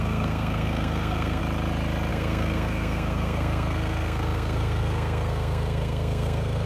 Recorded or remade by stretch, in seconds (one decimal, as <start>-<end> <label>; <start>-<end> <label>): 0.0-1.4 remade; 1.4-2.1 recorded; 2.1-6.7 remade